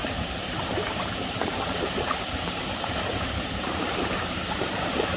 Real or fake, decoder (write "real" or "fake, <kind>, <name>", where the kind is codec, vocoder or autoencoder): fake, vocoder, BigVGAN v2